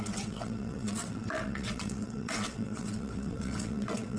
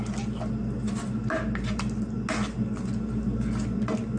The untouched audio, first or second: second